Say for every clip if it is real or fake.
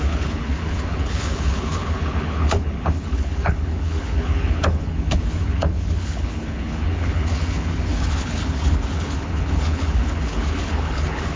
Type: fake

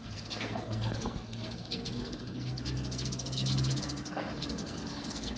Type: fake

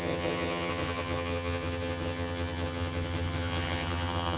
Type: fake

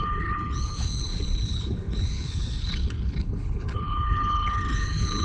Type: fake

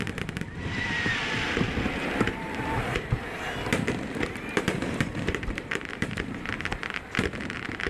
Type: fake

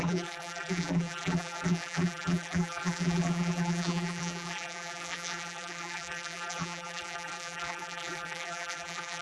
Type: fake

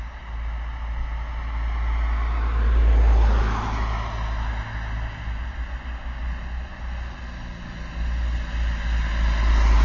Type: real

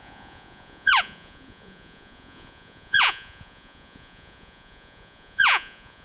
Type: fake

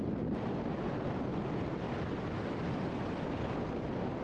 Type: real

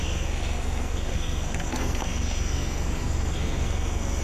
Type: fake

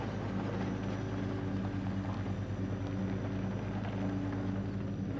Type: real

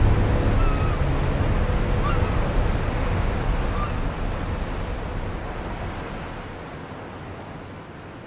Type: real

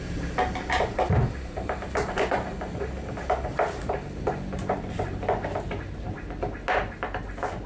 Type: real